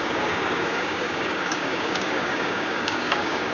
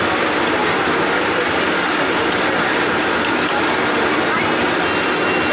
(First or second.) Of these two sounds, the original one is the second